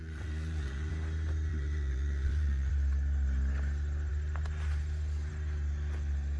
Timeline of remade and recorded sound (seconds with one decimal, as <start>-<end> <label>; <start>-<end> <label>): 0.0-0.9 remade; 0.9-1.5 recorded; 1.5-2.7 remade; 2.7-6.4 recorded